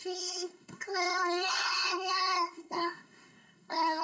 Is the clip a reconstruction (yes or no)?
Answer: yes